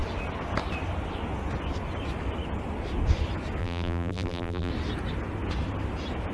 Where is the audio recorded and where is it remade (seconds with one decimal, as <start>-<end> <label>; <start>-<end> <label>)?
0.0-3.6 recorded; 3.6-4.7 remade; 4.7-6.3 recorded